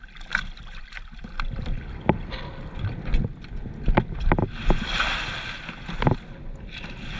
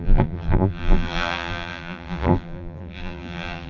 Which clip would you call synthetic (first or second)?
second